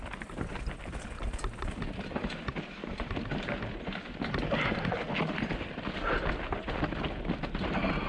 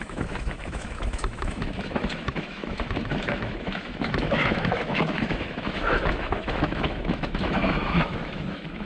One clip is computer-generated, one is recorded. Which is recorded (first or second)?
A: first